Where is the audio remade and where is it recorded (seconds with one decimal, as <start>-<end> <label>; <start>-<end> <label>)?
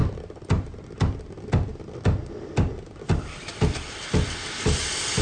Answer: 0.0-5.2 recorded